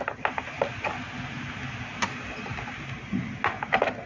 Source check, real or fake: real